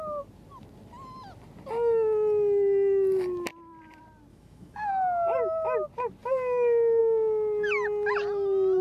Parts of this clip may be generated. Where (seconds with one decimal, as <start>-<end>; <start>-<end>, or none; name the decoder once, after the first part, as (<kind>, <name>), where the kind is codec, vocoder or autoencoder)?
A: 4.3-4.9 (autoencoder, DAC-VAE)